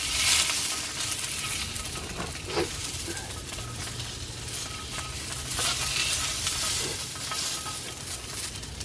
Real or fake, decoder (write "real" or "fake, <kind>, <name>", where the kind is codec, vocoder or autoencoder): real